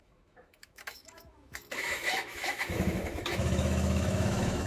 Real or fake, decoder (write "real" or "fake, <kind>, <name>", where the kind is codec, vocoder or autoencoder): fake, autoencoder, DAC-VAE